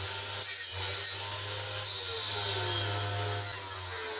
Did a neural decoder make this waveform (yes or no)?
no